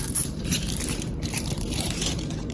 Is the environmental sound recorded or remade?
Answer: remade